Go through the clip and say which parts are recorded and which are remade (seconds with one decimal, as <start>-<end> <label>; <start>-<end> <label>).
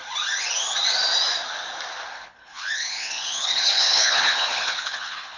0.0-2.1 recorded; 2.1-5.4 remade